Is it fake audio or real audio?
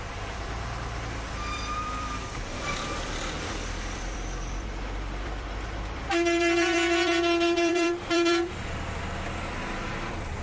fake